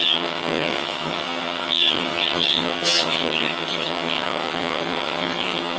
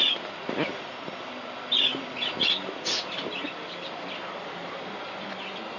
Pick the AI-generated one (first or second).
first